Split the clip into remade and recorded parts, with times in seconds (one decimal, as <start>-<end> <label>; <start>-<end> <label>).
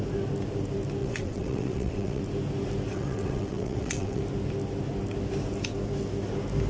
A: 0.0-1.0 recorded; 1.0-2.2 remade; 2.2-2.9 recorded; 2.9-4.2 remade; 4.2-6.7 recorded